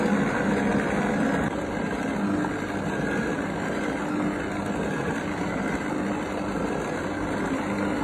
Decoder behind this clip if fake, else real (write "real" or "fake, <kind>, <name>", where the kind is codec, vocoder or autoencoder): real